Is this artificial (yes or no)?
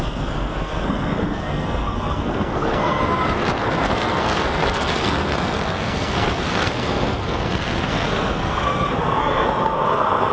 yes